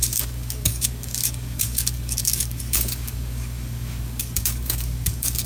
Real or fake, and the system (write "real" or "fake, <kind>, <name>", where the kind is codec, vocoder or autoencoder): fake, codec, DAC